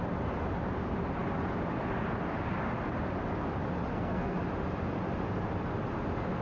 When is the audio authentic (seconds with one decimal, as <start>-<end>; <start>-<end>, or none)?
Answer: 0.0-3.9; 4.4-6.4